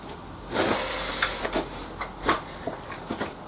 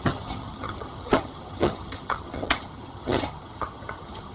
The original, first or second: first